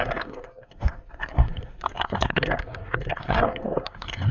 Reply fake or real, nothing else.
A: fake